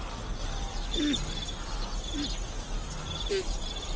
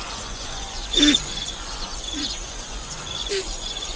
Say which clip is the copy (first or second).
second